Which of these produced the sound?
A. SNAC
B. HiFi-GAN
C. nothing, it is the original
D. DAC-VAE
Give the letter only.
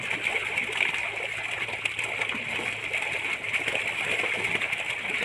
C